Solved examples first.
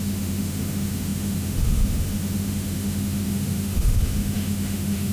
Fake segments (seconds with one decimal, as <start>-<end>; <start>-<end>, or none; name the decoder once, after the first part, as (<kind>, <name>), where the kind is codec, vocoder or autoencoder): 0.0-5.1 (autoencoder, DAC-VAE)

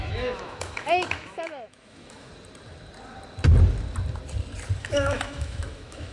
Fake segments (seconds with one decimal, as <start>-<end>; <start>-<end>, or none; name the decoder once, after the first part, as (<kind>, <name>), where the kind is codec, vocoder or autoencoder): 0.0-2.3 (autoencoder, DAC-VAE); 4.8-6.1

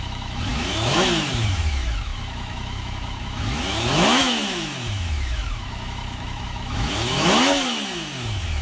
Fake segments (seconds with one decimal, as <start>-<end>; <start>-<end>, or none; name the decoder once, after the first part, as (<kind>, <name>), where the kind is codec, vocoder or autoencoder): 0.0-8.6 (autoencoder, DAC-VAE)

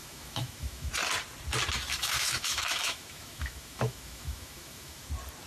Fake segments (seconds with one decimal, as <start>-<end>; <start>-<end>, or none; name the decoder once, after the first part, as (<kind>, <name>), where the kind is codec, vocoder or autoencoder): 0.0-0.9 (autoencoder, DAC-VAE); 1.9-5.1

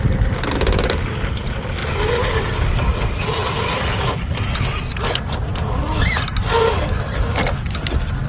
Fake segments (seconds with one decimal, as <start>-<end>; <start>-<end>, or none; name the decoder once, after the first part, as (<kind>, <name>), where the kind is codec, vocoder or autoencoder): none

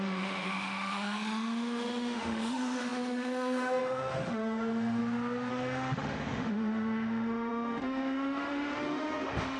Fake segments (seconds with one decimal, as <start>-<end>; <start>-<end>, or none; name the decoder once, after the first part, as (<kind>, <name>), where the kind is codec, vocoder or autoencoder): 0.0-5.0 (autoencoder, DAC-VAE); 5.5-9.6